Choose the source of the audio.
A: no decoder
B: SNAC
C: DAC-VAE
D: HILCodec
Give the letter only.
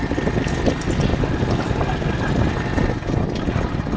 A